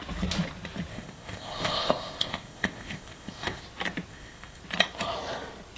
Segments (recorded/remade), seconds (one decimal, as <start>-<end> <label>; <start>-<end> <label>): 0.0-0.9 recorded; 0.9-3.6 remade; 3.6-4.1 recorded; 4.1-4.6 remade; 4.6-5.8 recorded